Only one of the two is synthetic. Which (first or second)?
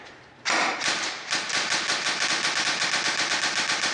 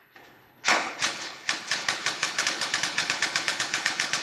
second